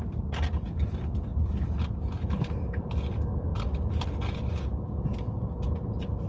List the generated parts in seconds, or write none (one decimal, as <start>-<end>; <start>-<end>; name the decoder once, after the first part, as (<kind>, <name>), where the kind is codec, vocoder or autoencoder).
none